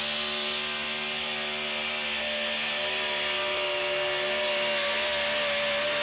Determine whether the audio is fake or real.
real